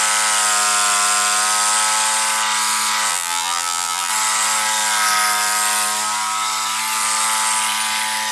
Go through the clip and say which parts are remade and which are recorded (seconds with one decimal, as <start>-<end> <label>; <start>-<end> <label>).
0.0-3.1 recorded; 3.1-4.1 remade; 4.1-8.3 recorded

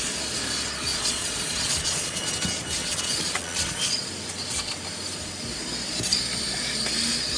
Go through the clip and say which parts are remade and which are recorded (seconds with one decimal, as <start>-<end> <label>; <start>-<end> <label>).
0.0-0.9 recorded; 0.9-2.3 remade; 2.3-2.8 recorded; 2.8-4.1 remade; 4.1-7.4 recorded

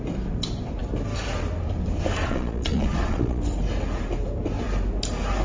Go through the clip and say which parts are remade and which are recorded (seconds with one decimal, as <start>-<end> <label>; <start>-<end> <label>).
0.0-2.2 recorded; 2.2-3.4 remade; 3.4-5.4 recorded

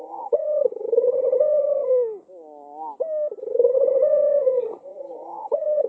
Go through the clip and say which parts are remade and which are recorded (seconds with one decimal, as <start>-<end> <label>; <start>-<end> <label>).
0.0-1.9 remade; 1.9-3.4 recorded; 3.4-5.9 remade